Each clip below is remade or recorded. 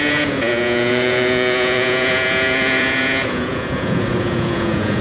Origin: remade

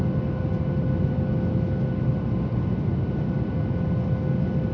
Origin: recorded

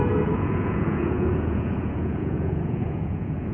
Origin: remade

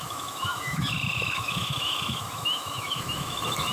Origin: remade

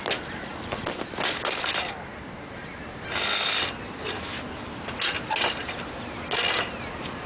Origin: recorded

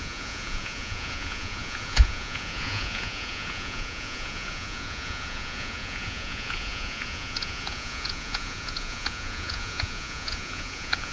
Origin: remade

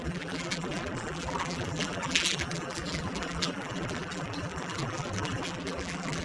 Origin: remade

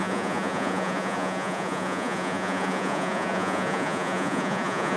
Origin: remade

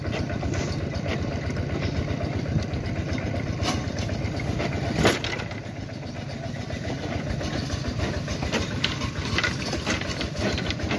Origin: recorded